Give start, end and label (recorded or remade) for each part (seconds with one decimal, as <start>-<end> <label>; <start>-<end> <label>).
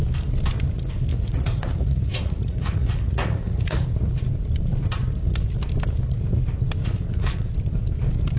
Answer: 0.0-1.1 recorded; 1.1-3.8 remade; 3.8-6.8 recorded; 6.8-7.5 remade; 7.5-8.4 recorded